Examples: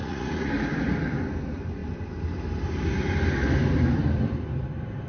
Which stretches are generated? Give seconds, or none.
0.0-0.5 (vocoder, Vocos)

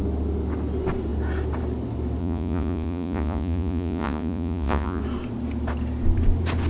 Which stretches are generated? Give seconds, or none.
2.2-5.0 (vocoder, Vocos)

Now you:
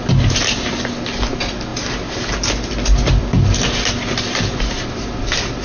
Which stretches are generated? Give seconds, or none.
none

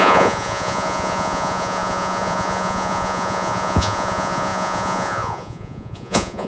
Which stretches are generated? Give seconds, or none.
0.0-6.5 (vocoder, Vocos)

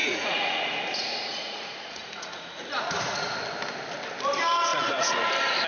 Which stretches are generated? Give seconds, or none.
0.0-3.4 (vocoder, Vocos); 4.7-5.3